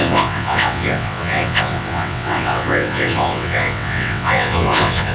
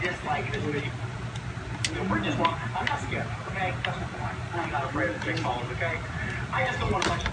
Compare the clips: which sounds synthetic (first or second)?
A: first